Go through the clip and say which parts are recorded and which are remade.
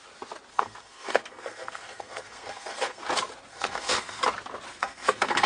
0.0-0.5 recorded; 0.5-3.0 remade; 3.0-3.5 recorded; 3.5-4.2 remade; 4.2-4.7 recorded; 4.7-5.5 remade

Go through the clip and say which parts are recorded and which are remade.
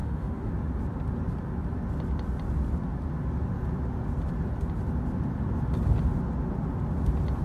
0.0-0.5 remade; 0.5-7.4 recorded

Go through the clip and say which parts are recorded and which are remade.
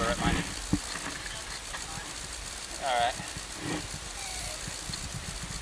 0.0-5.6 recorded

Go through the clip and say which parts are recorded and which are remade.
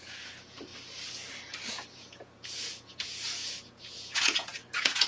0.0-0.7 remade; 0.7-1.7 recorded; 1.7-5.1 remade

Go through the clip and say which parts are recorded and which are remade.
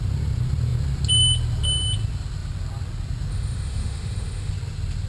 0.0-3.3 recorded; 3.3-4.5 remade; 4.5-5.1 recorded